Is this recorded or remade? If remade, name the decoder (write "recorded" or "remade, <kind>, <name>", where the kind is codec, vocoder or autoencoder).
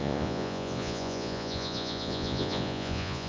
remade, vocoder, Vocos